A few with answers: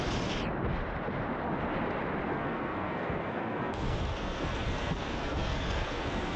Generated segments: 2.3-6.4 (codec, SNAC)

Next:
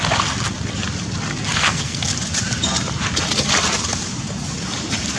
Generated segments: 1.5-2.0 (codec, SNAC)

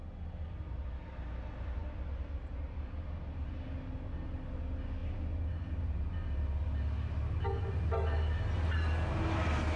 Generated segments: none